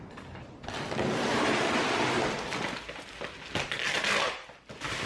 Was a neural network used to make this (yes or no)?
no